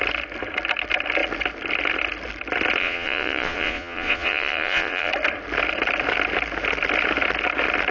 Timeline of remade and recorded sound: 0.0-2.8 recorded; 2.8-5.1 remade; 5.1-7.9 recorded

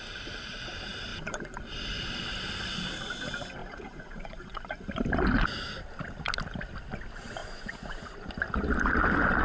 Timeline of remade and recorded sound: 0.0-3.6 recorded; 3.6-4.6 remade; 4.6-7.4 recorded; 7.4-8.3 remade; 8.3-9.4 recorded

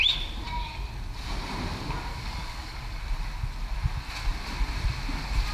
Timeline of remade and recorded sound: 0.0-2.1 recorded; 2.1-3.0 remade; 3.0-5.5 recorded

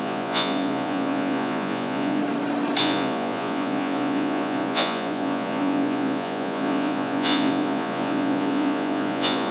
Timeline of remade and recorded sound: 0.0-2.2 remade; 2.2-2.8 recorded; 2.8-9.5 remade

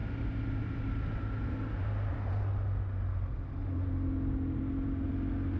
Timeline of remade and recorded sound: 0.0-5.6 recorded

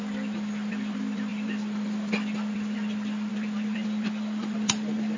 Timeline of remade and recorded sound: 0.0-5.2 recorded